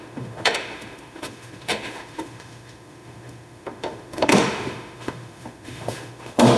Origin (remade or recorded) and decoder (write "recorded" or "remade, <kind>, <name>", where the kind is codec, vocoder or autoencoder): remade, autoencoder, DAC-VAE